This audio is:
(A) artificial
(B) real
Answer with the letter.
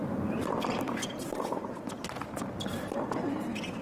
B